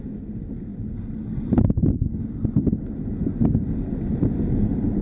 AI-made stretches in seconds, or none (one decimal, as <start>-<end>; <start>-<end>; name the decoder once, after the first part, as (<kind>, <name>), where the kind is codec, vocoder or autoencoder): none